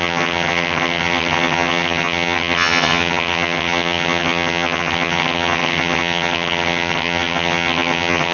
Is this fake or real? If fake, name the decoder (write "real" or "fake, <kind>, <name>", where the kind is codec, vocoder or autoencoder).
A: fake, vocoder, HiFi-GAN